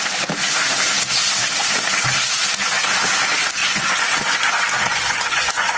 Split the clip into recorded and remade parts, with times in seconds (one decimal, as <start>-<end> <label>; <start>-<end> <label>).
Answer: 0.0-3.6 recorded; 3.6-4.4 remade; 4.4-4.9 recorded; 4.9-5.8 remade